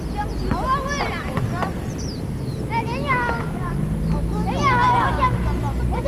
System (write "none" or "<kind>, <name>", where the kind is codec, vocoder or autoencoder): none